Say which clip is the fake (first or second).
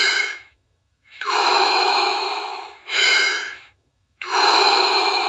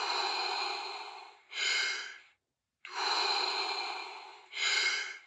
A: first